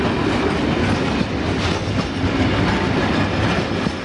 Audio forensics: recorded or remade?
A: recorded